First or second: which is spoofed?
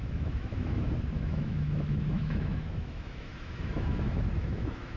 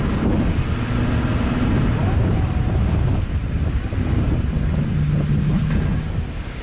first